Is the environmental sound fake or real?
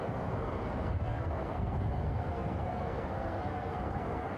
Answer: fake